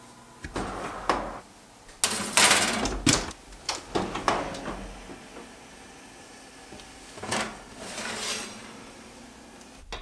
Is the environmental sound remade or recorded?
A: recorded